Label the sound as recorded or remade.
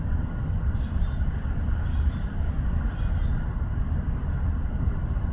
recorded